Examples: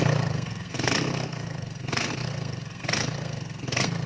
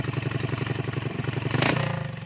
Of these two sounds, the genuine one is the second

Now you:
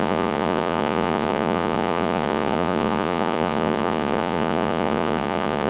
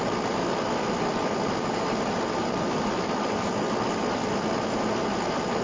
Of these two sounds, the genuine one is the second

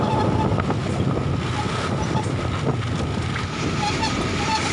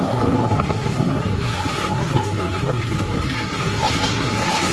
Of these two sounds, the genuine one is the first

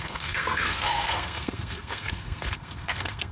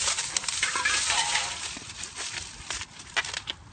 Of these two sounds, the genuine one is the second